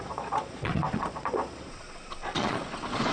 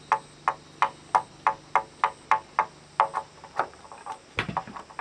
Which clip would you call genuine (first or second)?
second